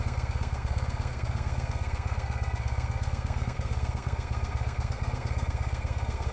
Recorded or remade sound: remade